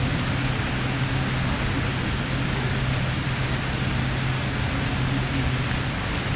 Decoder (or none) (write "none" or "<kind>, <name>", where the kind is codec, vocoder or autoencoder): none